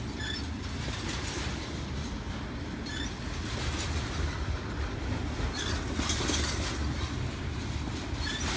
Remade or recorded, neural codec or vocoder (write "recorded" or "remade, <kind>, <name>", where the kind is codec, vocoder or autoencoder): recorded